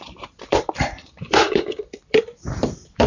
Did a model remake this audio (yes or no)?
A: yes